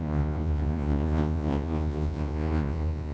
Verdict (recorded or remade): remade